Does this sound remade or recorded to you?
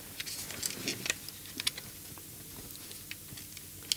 recorded